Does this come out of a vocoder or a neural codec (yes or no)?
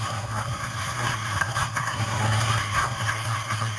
yes